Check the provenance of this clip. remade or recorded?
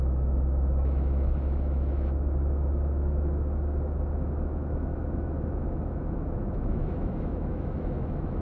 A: remade